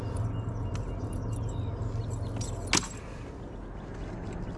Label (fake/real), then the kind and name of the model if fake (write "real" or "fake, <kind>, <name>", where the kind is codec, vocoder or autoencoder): real